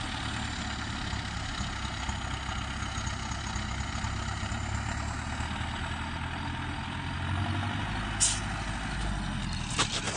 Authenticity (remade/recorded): recorded